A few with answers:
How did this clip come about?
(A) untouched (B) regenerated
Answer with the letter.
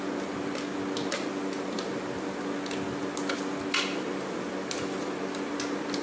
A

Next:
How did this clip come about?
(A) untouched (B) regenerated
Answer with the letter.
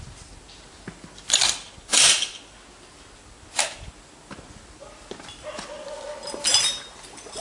A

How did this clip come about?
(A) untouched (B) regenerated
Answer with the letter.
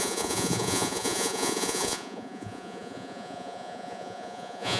B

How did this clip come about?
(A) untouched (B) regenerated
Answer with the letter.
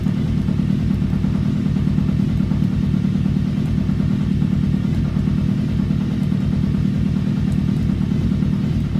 A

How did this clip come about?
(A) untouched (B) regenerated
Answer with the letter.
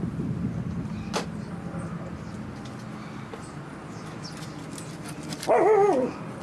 A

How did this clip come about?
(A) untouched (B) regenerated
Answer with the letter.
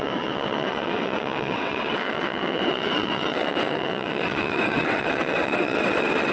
B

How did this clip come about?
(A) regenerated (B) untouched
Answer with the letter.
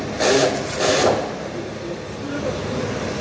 B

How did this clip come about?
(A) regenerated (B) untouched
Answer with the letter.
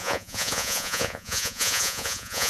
A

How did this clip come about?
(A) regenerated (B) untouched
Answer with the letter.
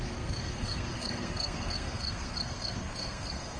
A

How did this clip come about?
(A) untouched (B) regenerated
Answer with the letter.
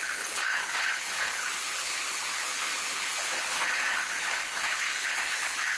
B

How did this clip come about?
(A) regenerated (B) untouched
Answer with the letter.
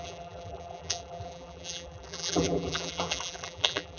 A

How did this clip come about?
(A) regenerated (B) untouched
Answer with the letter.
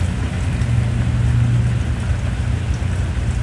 B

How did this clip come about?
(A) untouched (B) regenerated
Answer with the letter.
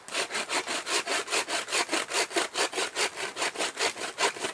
A